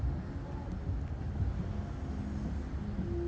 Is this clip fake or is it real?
real